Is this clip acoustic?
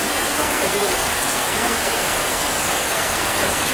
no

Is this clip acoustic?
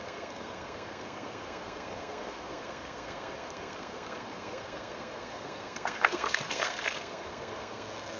no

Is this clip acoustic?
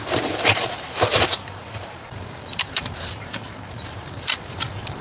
no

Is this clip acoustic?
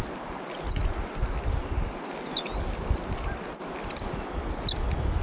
yes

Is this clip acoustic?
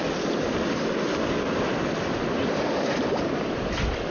yes